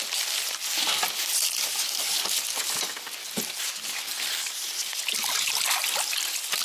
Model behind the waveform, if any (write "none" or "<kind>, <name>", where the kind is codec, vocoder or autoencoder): none